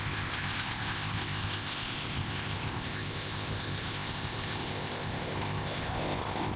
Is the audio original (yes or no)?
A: no